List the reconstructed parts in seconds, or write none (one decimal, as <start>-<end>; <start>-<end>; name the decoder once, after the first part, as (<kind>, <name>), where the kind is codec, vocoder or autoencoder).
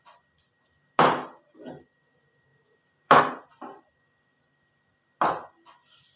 2.5-3.2 (vocoder, BigVGAN v2)